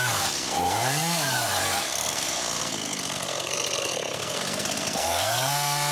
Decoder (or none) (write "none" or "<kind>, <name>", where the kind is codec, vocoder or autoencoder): codec, SNAC